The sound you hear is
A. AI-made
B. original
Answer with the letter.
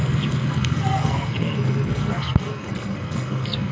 A